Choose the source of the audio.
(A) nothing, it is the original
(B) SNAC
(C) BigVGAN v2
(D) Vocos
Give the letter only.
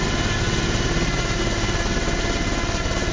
A